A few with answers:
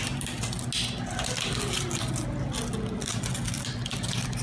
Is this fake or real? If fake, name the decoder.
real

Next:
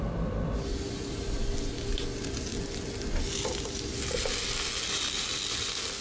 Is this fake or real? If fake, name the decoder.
real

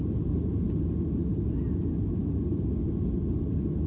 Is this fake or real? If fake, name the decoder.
real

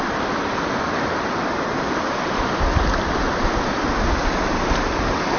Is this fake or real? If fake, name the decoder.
real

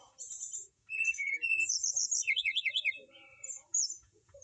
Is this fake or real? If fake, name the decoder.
fake, vocoder, Vocos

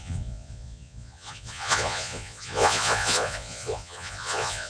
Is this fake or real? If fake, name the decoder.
fake, vocoder, Vocos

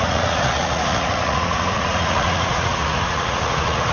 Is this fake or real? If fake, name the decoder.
fake, vocoder, Vocos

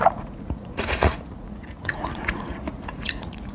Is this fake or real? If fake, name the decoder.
fake, vocoder, Vocos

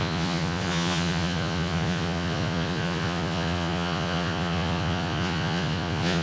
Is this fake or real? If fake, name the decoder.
fake, vocoder, Vocos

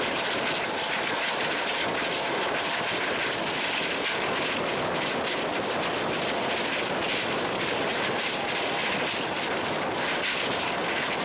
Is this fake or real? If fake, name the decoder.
real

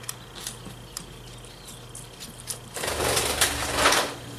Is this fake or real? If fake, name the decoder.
real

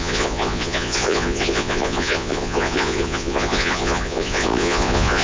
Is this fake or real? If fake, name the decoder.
fake, vocoder, Vocos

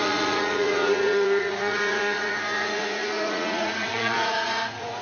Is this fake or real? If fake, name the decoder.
fake, vocoder, Vocos